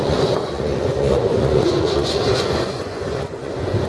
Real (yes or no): no